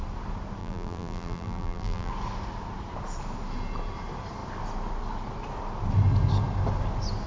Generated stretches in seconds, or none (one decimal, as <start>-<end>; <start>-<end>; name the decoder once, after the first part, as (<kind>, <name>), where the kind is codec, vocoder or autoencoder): 0.6-2.1 (vocoder, BigVGAN v2)